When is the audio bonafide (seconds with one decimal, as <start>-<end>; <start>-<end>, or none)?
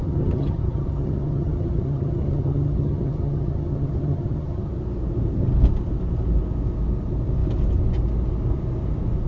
4.7-9.3